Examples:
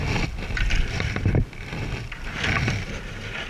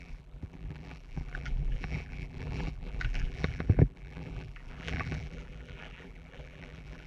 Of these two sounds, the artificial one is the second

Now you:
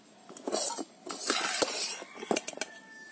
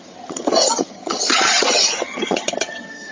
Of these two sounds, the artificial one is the second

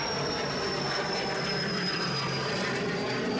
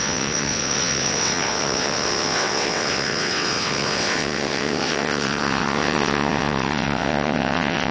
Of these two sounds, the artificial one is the second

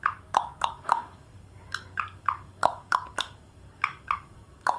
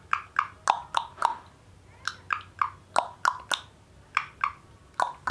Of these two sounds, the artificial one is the first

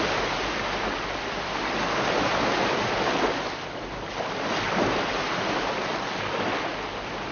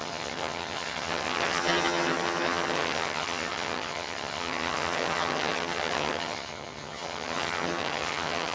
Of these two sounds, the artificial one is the second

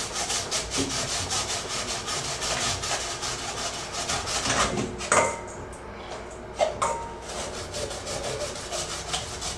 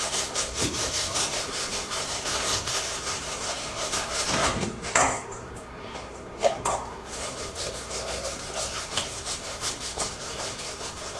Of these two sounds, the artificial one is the second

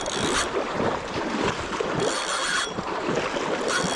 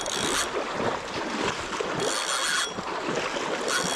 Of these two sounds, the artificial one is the first